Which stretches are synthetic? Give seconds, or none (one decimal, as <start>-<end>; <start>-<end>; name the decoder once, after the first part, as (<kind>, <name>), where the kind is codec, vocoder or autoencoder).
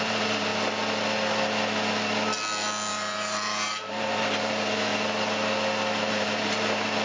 0.0-0.5 (vocoder, BigVGAN v2); 2.9-4.9; 6.1-7.0